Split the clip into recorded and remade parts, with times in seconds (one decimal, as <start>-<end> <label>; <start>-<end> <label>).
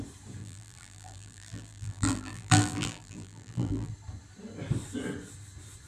0.0-0.4 recorded; 0.4-3.9 remade; 3.9-5.9 recorded